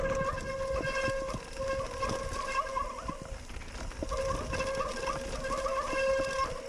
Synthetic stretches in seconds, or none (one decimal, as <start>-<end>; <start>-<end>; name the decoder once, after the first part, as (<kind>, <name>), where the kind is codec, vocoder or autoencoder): none